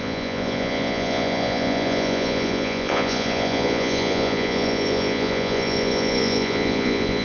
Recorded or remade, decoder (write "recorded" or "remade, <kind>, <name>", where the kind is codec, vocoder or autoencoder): remade, vocoder, Vocos